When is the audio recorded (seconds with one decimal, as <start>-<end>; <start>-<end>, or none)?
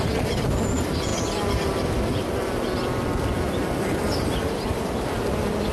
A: 0.0-5.7